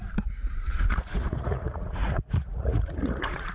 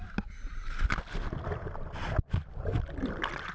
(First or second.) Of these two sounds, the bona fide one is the second